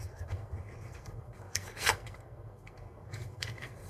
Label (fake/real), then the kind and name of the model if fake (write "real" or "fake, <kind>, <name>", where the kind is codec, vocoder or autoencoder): fake, codec, SNAC